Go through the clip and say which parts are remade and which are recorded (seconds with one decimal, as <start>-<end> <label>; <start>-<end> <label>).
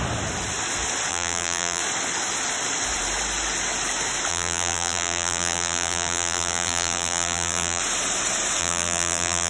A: 0.0-1.1 recorded; 1.1-1.8 remade; 1.8-4.3 recorded; 4.3-7.8 remade; 7.8-8.6 recorded; 8.6-9.5 remade